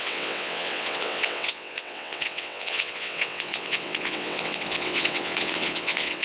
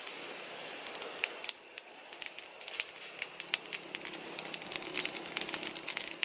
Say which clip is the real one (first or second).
second